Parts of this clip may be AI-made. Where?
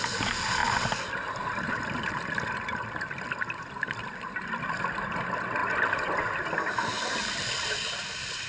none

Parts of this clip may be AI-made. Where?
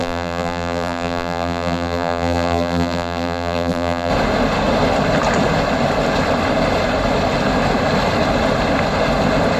0.0-4.1 (vocoder, BigVGAN v2)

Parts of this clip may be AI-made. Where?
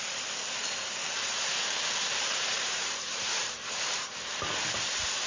2.5-4.1 (vocoder, BigVGAN v2)